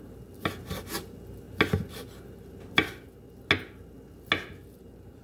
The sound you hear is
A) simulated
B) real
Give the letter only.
B